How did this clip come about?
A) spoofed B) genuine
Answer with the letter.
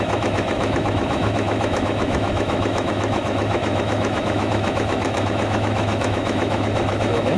A